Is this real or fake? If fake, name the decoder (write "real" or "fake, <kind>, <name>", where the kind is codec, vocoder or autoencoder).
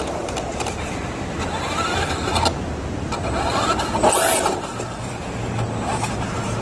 real